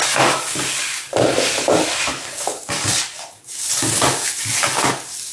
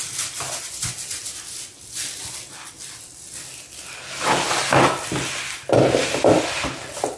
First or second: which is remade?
first